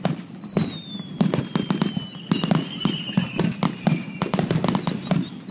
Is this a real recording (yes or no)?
yes